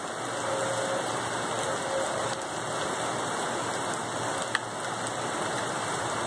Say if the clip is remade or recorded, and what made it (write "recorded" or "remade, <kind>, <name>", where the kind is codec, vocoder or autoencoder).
recorded